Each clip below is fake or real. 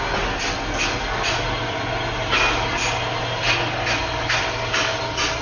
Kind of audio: real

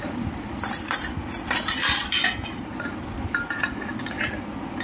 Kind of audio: real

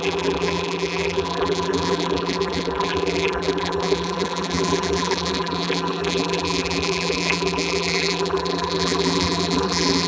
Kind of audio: fake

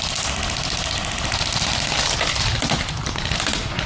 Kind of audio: real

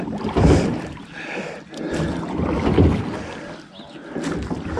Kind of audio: real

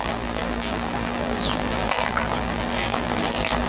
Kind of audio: fake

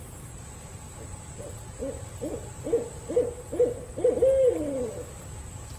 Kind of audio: real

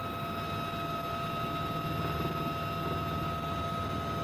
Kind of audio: real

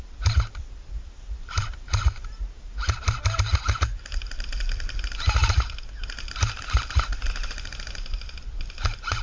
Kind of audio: fake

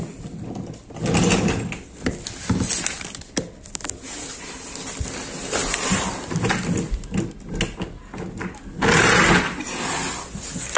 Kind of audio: real